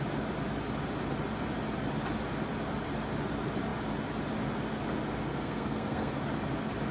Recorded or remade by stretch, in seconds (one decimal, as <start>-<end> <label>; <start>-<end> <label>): 0.0-5.3 recorded; 5.3-6.2 remade; 6.2-6.9 recorded